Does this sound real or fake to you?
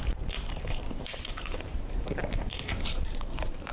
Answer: fake